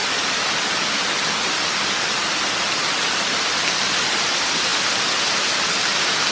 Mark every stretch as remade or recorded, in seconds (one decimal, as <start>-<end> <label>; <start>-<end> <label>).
0.0-6.3 recorded